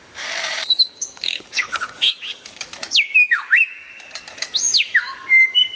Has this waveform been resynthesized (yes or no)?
yes